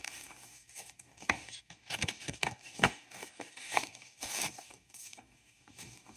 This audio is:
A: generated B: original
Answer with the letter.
A